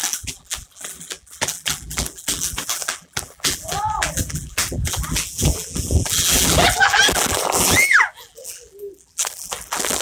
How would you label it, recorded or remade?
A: remade